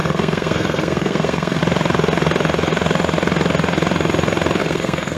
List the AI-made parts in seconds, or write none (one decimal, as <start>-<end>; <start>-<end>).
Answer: 0.0-1.6; 4.6-5.2